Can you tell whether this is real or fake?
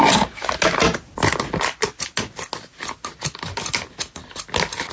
real